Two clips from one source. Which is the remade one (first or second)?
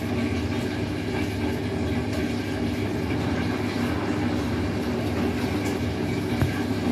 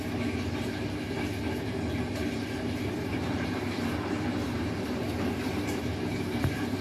second